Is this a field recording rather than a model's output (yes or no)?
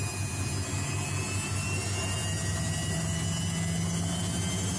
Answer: yes